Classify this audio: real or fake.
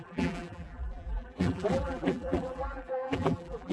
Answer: fake